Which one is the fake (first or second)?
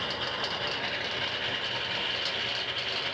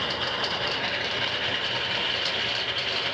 second